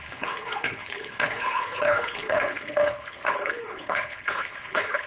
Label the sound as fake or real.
fake